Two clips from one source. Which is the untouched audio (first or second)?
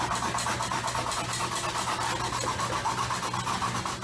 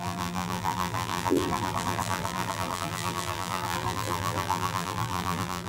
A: first